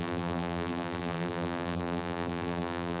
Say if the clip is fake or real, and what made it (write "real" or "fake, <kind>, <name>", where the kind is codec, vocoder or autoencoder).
fake, vocoder, BigVGAN v2